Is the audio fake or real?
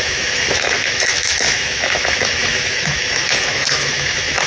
fake